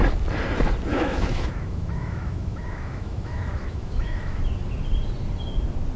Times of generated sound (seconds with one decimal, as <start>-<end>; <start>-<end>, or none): 0.9-4.4